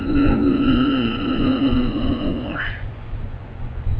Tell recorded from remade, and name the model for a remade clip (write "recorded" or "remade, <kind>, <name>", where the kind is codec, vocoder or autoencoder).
remade, vocoder, Vocos